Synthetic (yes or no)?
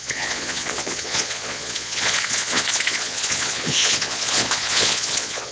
yes